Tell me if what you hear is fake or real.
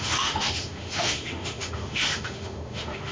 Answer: fake